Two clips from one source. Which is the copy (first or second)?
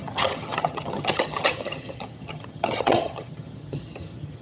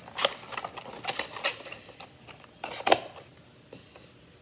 first